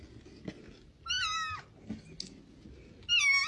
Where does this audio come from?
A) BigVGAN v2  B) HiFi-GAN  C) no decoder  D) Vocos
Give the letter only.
C